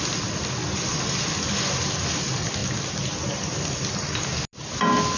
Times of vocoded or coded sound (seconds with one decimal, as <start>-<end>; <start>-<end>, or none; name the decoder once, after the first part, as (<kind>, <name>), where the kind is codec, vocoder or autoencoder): 0.6-1.3 (vocoder, BigVGAN v2)